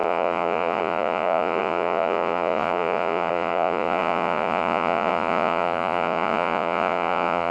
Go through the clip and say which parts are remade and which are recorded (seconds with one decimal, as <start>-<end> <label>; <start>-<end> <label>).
0.0-7.5 remade